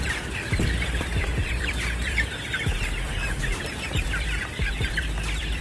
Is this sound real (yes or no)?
no